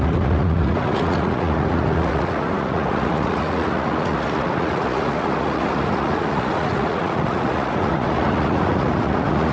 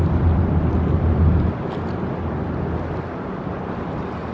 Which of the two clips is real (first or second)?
second